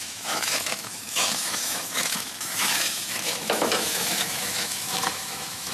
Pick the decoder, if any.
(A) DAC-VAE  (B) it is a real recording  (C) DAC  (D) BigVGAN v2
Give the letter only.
A